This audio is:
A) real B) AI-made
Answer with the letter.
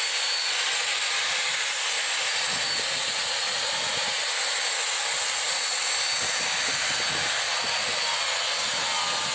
A